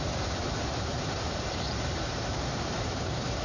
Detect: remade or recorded remade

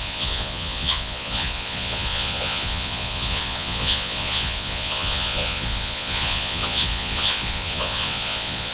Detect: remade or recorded remade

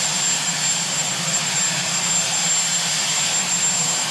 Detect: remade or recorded recorded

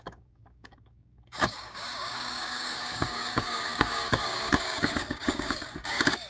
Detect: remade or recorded remade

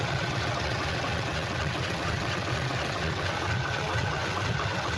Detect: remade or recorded remade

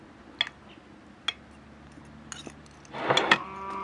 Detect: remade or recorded recorded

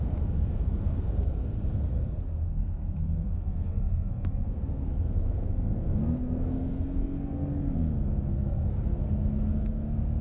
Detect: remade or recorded remade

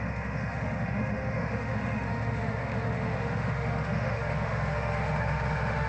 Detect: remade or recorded remade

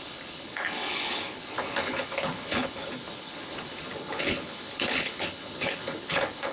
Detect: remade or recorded remade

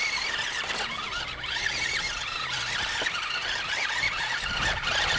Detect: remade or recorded recorded